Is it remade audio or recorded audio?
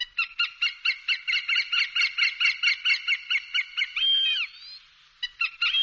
recorded